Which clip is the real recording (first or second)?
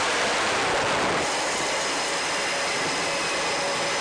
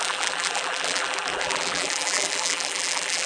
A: first